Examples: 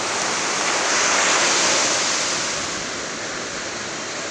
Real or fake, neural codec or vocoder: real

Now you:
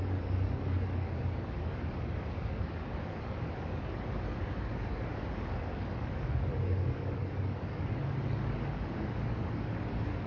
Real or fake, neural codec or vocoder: fake, codec, DAC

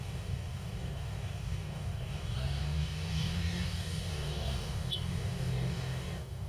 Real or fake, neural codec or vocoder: fake, codec, DAC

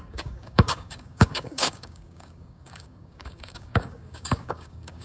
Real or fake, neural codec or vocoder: fake, codec, DAC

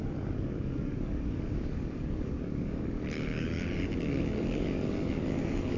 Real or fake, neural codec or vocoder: fake, codec, DAC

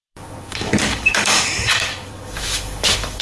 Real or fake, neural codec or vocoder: fake, codec, DAC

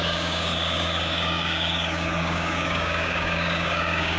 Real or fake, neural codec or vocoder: fake, codec, DAC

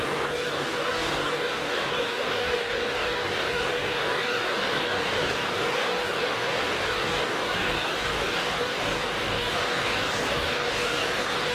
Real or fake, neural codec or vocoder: fake, codec, DAC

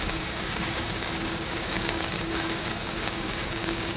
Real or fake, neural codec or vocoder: fake, codec, DAC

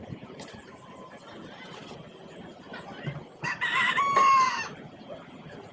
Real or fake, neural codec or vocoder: real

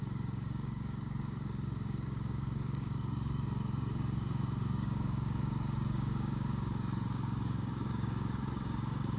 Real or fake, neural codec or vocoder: fake, codec, DAC